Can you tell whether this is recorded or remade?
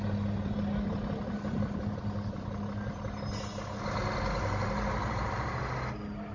recorded